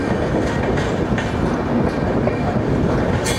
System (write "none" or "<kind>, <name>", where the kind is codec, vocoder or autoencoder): none